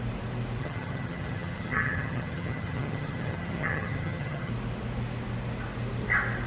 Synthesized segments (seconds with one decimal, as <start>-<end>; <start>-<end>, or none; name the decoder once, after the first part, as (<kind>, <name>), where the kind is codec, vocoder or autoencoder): 0.6-4.5 (vocoder, HiFi-GAN)